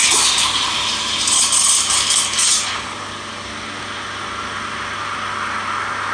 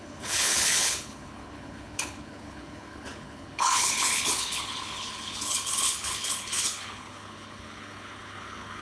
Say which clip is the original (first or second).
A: first